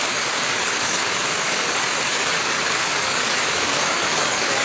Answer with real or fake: fake